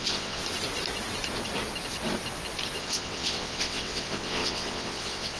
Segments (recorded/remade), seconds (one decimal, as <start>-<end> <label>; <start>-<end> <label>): 0.0-0.4 remade; 0.4-2.8 recorded; 2.8-5.4 remade